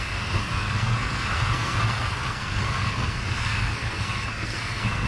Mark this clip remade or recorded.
remade